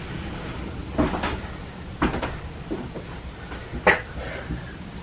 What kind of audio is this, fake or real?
real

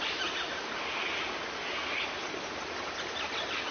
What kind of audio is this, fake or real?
real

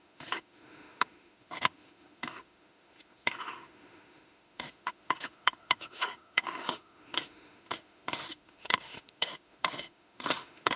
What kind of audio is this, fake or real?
fake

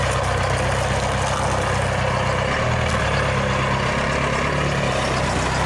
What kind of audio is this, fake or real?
real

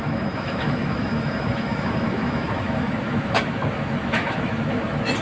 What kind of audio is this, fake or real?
fake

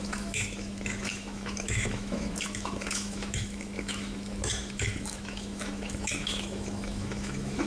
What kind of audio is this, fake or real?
fake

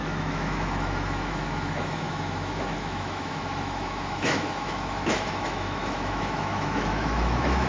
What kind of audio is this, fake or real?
fake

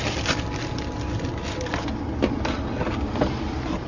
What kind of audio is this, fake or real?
real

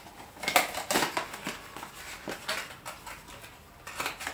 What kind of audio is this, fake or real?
real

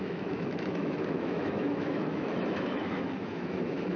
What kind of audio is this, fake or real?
fake